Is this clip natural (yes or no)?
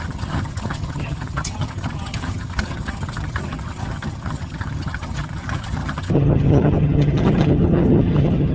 no